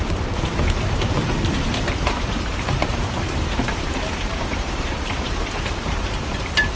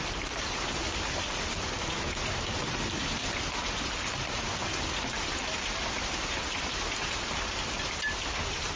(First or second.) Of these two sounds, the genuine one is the second